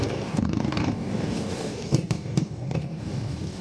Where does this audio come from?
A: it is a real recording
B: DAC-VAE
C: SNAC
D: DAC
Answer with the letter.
D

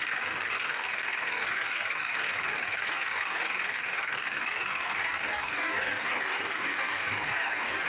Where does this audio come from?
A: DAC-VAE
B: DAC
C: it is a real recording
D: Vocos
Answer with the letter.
B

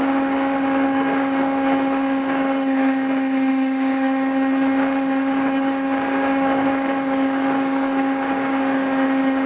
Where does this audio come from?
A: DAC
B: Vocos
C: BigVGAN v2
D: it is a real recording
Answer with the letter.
A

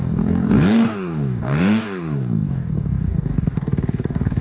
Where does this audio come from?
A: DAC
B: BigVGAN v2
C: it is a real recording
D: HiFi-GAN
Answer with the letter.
A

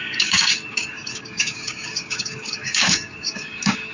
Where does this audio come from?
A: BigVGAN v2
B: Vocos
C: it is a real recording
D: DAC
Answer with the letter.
D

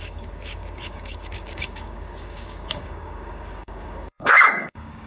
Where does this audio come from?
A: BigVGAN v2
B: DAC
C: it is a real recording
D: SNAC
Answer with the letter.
B